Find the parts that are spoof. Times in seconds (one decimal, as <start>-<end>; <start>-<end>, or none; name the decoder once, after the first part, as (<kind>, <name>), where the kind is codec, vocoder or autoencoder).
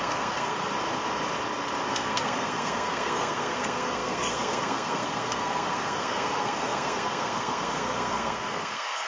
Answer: 0.0-0.7 (codec, SNAC); 1.9-9.1